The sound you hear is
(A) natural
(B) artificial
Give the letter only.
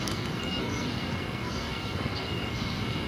B